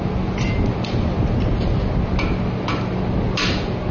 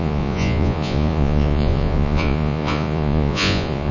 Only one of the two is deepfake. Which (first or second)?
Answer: second